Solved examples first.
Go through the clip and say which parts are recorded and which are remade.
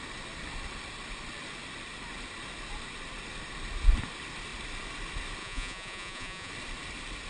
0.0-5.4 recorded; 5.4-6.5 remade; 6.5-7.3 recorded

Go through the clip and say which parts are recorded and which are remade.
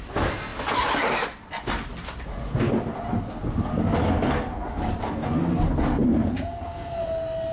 0.0-6.2 recorded; 6.2-6.9 remade; 6.9-7.5 recorded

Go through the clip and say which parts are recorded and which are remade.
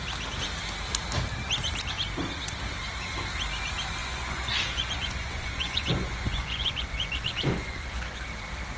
0.0-4.0 recorded; 4.0-8.2 remade; 8.2-8.8 recorded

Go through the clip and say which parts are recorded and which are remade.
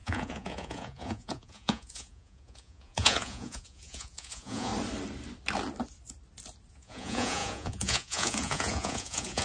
0.0-4.7 remade; 4.7-6.7 recorded; 6.7-9.4 remade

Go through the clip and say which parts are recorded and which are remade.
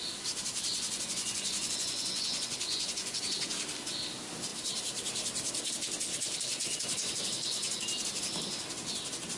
0.0-0.7 recorded; 0.7-3.6 remade; 3.6-6.5 recorded; 6.5-7.8 remade; 7.8-9.4 recorded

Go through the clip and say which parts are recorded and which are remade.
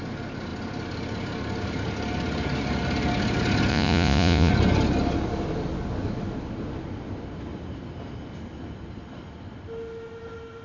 0.0-3.7 recorded; 3.7-4.5 remade; 4.5-10.6 recorded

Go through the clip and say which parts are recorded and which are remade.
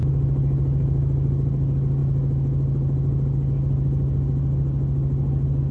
0.0-5.7 recorded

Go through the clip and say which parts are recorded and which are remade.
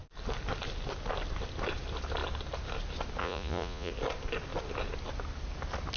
0.0-3.2 recorded; 3.2-3.9 remade; 3.9-6.0 recorded